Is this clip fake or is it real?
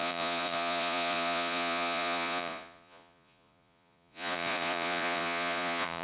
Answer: fake